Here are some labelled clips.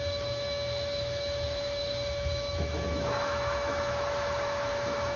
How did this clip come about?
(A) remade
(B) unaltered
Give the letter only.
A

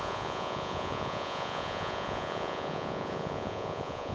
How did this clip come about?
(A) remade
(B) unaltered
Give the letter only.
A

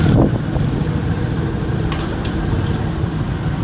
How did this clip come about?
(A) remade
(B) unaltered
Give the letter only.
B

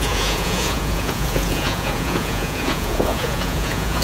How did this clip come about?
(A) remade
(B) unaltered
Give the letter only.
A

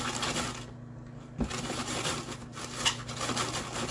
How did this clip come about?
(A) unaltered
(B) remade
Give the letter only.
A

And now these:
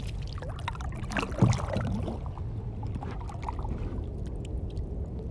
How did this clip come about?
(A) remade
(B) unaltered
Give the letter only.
B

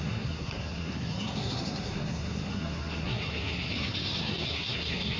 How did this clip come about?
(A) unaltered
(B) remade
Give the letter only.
B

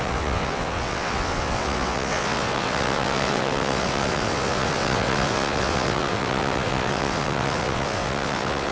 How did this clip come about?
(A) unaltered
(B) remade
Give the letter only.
B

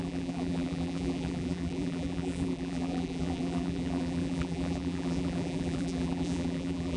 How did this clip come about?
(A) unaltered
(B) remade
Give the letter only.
B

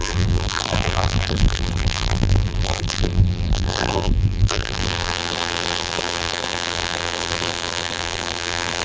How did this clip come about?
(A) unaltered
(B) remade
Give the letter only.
B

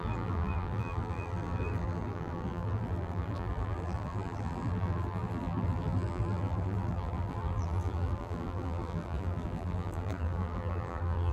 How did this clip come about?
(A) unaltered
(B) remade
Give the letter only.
B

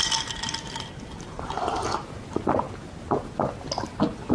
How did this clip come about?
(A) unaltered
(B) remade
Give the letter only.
A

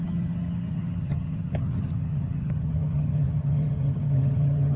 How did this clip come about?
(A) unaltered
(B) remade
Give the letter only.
B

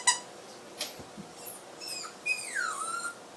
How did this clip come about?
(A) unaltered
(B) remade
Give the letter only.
A